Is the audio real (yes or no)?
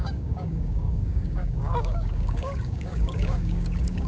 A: no